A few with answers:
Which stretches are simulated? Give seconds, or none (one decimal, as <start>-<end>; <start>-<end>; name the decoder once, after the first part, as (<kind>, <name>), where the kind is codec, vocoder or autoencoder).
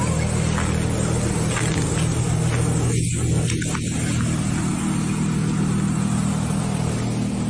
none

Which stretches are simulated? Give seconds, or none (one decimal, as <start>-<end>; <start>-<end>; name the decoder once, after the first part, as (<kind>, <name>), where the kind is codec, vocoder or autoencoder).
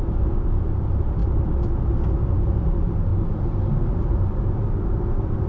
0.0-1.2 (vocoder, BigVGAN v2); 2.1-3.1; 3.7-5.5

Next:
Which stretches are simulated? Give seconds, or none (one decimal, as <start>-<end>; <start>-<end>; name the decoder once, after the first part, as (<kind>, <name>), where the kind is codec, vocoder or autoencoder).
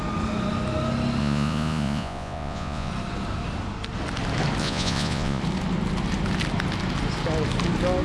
1.2-2.9 (vocoder, Vocos); 4.6-5.4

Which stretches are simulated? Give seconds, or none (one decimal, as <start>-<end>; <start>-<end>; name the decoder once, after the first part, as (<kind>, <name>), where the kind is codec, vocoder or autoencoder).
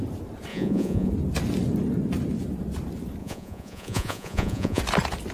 0.5-1.1 (vocoder, Vocos); 3.2-4.8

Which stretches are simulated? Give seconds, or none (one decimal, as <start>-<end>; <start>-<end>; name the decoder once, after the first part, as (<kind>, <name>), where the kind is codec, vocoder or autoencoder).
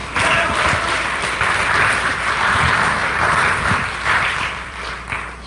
0.0-2.2 (vocoder, BigVGAN v2); 3.0-4.9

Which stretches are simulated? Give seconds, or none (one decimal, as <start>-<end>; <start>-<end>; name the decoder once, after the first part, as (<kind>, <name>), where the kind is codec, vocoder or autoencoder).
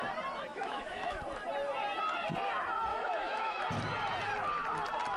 0.5-1.2 (autoencoder, DAC-VAE); 2.9-3.6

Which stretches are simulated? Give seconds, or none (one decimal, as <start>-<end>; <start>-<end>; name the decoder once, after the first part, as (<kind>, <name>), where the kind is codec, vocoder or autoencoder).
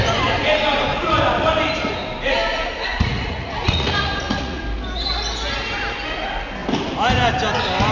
2.9-4.6 (vocoder, Vocos)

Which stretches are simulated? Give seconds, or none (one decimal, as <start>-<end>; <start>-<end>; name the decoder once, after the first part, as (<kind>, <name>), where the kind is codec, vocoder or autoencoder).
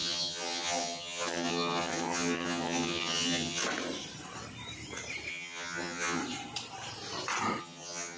0.0-3.6 (vocoder, HiFi-GAN); 5.3-6.2; 7.6-8.2